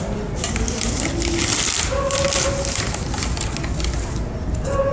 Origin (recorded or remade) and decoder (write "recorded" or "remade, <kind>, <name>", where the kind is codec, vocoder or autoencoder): recorded